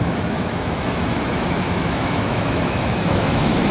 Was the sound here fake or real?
fake